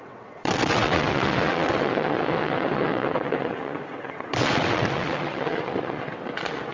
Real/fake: fake